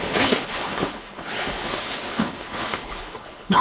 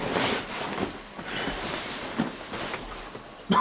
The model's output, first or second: first